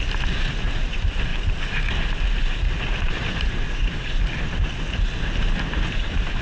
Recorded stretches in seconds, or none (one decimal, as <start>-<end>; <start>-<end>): 0.0-1.3; 1.9-3.2; 4.3-6.4